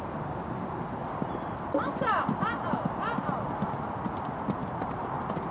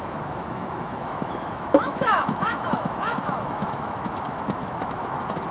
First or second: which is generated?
second